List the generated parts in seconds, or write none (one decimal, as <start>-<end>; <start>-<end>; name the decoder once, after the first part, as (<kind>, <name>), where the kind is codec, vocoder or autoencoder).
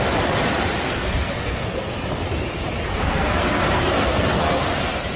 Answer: 0.8-1.9 (codec, SNAC); 2.9-4.6